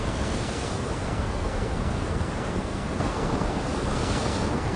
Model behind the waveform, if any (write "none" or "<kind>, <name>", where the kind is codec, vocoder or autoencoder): codec, SNAC